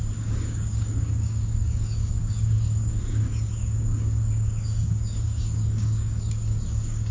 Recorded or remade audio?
remade